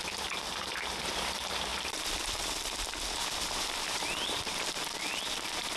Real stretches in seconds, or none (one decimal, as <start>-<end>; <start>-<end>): none